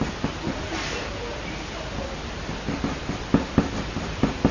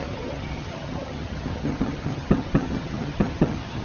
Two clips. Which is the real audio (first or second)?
first